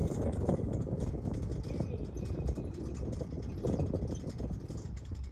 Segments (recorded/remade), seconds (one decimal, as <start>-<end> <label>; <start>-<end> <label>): 0.0-1.5 remade; 1.5-4.7 recorded; 4.7-5.3 remade